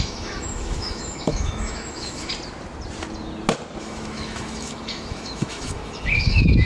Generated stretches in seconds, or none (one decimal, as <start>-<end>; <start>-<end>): 0.0-2.3; 3.8-6.7